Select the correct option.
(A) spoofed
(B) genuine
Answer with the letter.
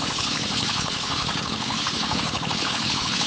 A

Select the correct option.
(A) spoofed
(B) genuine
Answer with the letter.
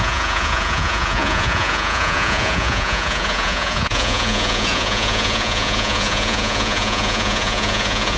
A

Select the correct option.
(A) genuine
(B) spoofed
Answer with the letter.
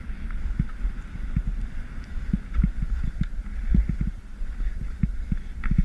A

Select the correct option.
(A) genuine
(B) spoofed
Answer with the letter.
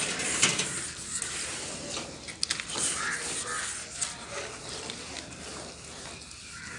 A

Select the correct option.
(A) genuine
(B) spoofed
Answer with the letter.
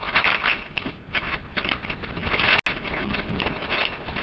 A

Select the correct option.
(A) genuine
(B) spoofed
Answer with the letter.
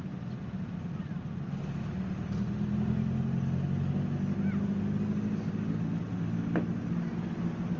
A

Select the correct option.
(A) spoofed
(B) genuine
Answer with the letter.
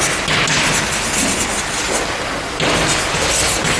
B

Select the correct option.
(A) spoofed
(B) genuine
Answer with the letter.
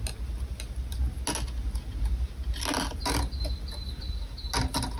B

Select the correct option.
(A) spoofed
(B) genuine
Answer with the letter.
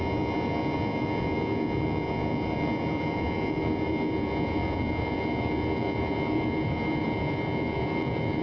A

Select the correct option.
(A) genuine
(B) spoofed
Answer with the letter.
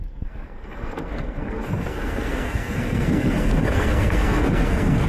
B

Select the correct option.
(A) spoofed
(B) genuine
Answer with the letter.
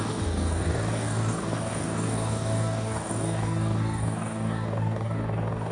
A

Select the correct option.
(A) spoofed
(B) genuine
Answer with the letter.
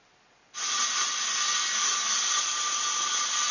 B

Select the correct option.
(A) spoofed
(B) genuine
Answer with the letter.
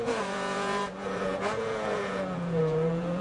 A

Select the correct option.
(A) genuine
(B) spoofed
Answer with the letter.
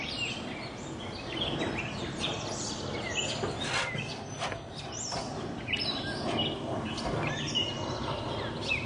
A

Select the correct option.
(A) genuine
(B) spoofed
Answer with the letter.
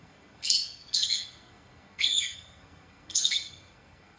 B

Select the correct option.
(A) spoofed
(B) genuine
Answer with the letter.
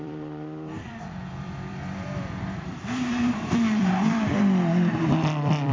A